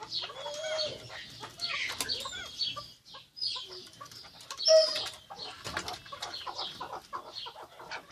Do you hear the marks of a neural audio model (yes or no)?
no